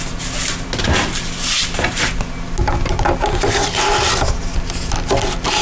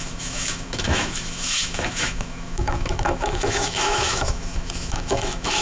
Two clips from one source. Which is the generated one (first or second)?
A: second